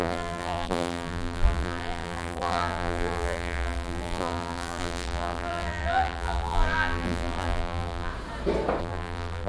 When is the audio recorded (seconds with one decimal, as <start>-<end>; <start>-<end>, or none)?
8.1-8.8